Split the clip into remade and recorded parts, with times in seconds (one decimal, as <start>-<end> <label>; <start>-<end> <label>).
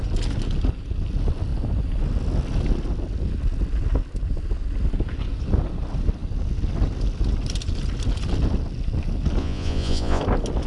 0.0-9.4 recorded; 9.4-10.2 remade; 10.2-10.7 recorded